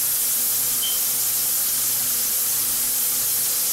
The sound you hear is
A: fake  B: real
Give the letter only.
B